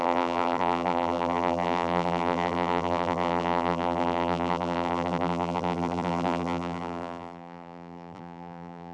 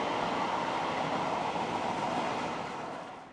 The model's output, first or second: first